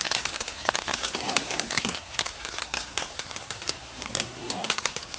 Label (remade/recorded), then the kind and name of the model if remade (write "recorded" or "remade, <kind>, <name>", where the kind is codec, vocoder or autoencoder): remade, codec, SNAC